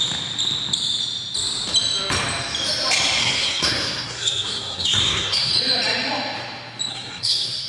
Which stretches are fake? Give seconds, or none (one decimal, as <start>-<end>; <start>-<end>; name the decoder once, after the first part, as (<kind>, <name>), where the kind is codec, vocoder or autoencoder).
3.2-5.5 (codec, SNAC); 6.9-7.7